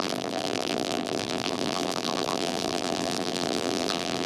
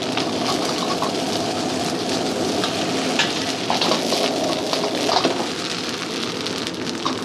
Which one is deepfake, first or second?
first